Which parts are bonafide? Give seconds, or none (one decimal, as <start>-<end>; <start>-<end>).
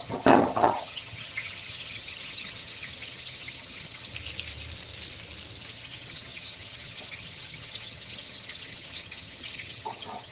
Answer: 4.1-5.6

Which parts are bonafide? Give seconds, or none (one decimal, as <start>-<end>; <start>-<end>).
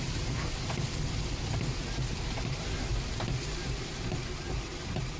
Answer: 0.0-5.2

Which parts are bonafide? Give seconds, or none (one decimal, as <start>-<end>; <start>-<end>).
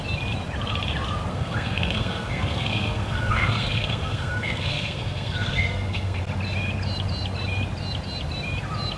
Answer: 0.0-1.3; 6.2-9.0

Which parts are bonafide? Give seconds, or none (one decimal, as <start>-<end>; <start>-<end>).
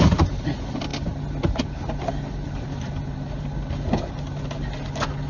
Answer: 0.0-5.3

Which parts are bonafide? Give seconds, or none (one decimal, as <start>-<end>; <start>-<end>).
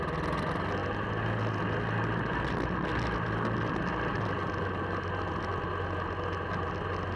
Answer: 0.0-7.2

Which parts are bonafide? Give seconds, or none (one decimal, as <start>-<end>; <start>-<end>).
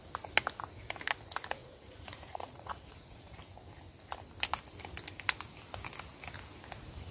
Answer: 0.0-1.6; 3.3-7.1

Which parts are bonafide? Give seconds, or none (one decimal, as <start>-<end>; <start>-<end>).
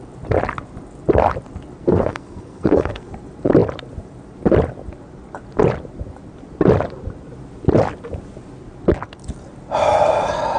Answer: 0.0-1.8; 3.1-10.6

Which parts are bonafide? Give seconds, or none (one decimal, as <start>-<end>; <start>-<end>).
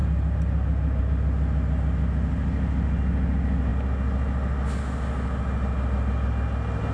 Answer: 0.0-6.9